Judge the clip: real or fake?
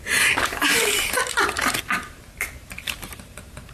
fake